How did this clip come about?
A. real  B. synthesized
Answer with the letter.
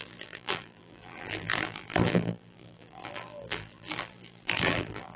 B